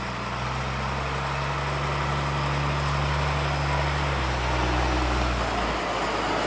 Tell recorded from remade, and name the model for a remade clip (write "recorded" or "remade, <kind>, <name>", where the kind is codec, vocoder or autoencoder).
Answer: recorded